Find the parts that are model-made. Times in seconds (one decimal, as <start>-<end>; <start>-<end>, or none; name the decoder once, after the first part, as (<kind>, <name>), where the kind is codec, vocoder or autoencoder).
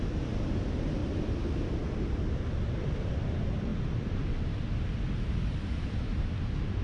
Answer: none